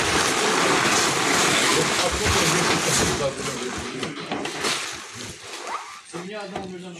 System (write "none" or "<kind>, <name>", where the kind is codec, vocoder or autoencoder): none